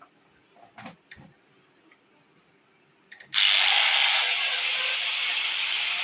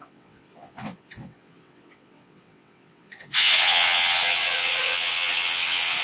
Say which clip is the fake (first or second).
second